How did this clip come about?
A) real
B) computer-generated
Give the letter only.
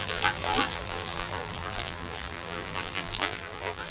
B